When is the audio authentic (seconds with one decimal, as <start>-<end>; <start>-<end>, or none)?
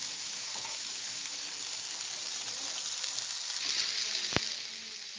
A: 1.5-5.2